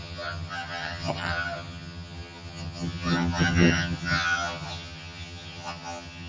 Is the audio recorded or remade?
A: remade